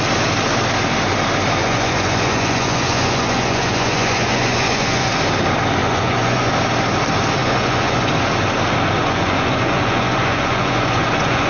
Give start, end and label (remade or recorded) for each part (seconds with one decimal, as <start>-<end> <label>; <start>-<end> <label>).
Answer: 0.0-1.6 recorded; 1.6-5.1 remade; 5.1-5.8 recorded; 5.8-6.5 remade; 6.5-7.4 recorded; 7.4-8.1 remade; 8.1-9.0 recorded; 9.0-11.5 remade